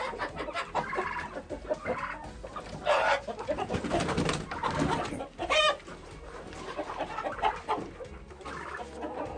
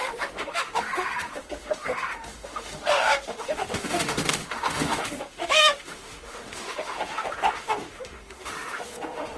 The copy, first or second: second